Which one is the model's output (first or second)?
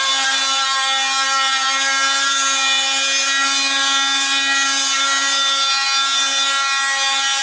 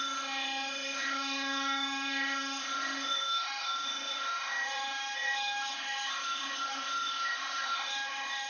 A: second